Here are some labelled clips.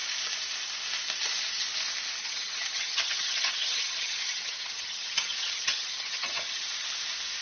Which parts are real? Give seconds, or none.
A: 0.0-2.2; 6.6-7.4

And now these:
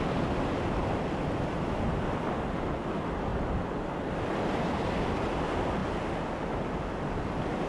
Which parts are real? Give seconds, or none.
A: 0.0-7.7

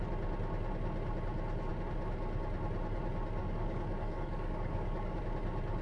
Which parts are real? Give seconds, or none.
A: 0.0-3.4; 5.2-5.8

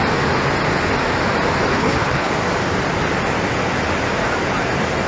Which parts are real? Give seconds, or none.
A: 0.0-1.7; 2.3-5.1

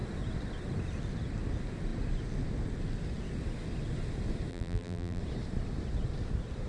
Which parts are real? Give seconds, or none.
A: 0.0-4.5; 5.2-6.7

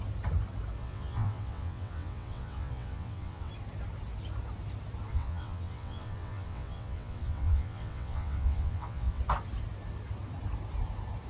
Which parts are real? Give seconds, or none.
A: 0.0-0.8; 3.5-5.1; 9.2-11.3

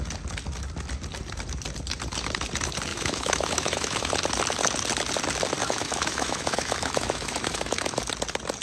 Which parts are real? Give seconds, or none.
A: 0.0-2.9; 4.1-5.6; 8.0-8.6

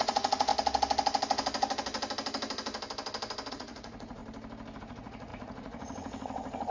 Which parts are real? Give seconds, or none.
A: 0.5-3.5; 4.2-4.8